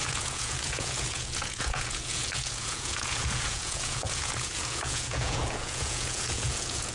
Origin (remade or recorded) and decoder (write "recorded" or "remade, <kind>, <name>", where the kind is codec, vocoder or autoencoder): remade, vocoder, Vocos